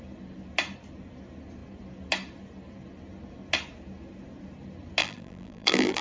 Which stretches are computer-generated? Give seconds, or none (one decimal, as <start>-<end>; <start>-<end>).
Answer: 5.0-6.0